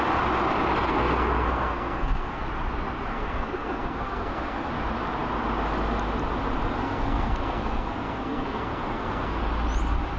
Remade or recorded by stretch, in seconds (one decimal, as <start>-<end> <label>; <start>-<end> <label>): 0.0-0.9 recorded; 0.9-2.4 remade; 2.4-3.1 recorded; 3.1-4.7 remade; 4.7-6.8 recorded; 6.8-9.4 remade; 9.4-10.2 recorded